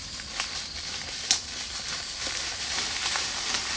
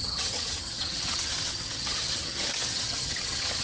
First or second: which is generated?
second